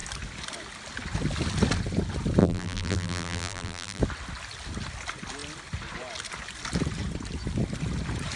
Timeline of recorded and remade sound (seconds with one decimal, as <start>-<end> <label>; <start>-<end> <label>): 0.0-2.4 recorded; 2.4-4.0 remade; 4.0-8.4 recorded